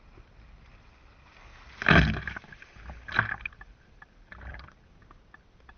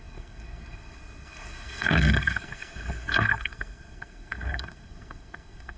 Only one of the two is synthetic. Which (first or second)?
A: second